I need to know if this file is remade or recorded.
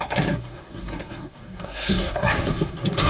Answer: remade